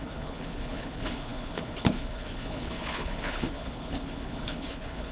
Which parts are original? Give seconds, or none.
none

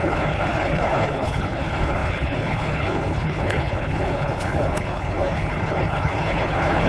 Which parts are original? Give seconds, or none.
none

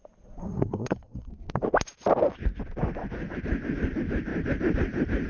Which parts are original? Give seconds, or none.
0.0-0.4; 1.3-5.3

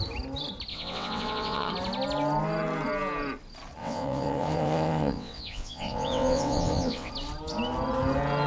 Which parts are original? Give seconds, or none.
0.0-0.7; 1.7-3.8; 7.1-8.5

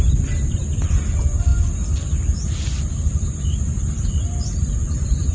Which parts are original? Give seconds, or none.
0.0-5.3

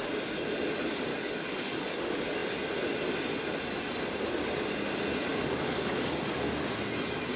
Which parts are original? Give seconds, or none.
0.0-1.1; 2.0-5.3; 6.3-7.4

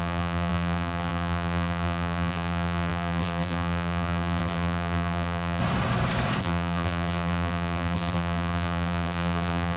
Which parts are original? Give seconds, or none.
5.6-6.4

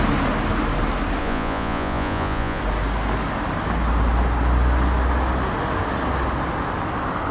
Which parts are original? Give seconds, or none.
0.0-1.2; 2.6-7.3